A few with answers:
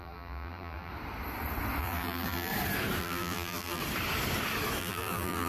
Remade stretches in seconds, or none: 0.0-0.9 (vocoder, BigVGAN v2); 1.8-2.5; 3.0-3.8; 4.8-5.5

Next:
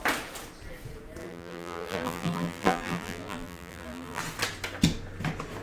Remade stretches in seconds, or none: 1.2-4.2 (vocoder, BigVGAN v2)

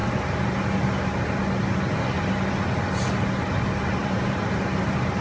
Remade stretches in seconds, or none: 4.0-4.8 (vocoder, BigVGAN v2)

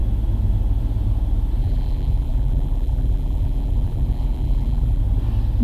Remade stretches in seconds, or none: 1.6-5.0 (vocoder, BigVGAN v2)

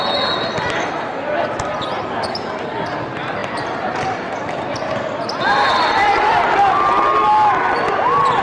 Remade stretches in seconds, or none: 3.4-4.9 (vocoder, BigVGAN v2)

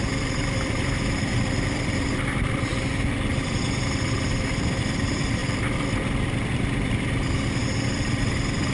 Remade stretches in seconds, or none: 0.0-2.7 (vocoder, BigVGAN v2); 3.3-8.7